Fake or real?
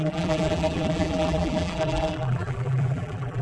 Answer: fake